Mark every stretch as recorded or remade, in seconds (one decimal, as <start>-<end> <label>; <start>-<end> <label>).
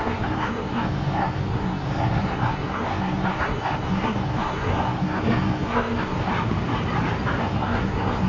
0.0-6.3 remade; 6.3-7.4 recorded; 7.4-8.3 remade